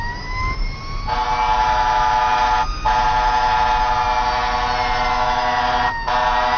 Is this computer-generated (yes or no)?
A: no